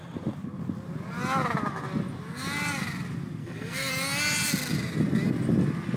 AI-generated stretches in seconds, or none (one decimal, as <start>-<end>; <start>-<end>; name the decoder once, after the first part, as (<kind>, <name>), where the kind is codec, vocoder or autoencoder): 3.4-3.9 (codec, SNAC)